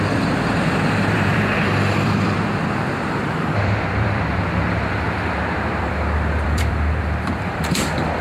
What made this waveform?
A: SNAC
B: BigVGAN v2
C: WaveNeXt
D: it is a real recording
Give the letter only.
B